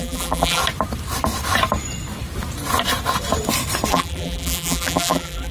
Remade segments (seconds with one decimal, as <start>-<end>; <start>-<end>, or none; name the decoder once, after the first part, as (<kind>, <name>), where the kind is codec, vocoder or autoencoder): 0.0-0.6 (vocoder, BigVGAN v2); 3.9-5.5